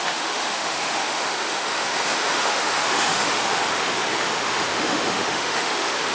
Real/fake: fake